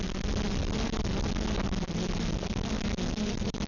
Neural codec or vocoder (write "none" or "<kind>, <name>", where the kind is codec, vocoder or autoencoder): none